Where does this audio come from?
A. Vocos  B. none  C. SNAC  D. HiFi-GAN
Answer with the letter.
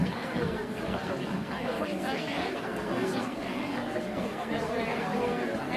C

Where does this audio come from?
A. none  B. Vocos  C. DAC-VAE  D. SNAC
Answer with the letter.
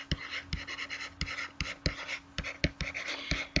A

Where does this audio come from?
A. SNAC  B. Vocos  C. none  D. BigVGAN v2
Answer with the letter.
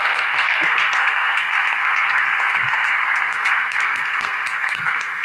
A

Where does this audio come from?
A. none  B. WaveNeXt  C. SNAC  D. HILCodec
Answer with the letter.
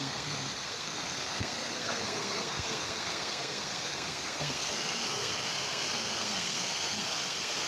C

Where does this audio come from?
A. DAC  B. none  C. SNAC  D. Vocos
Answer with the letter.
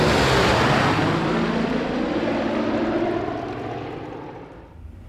B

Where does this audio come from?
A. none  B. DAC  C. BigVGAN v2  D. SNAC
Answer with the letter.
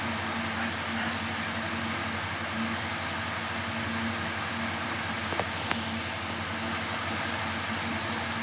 A